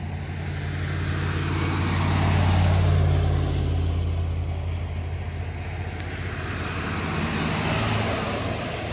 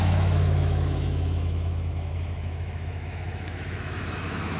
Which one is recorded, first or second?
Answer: first